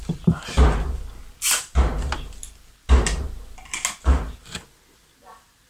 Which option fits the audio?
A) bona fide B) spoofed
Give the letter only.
A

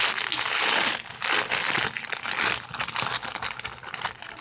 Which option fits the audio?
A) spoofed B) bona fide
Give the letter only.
B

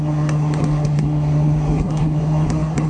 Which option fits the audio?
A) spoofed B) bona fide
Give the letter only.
A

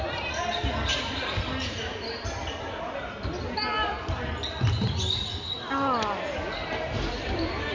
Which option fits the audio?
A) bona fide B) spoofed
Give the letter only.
A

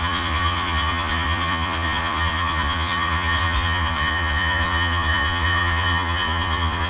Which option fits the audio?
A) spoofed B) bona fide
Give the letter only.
A